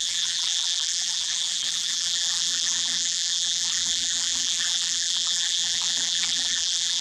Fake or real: fake